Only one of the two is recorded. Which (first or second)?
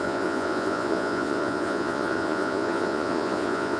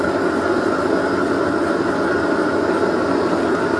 second